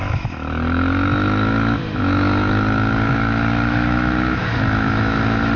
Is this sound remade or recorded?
remade